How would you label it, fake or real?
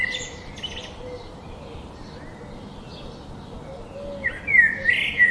real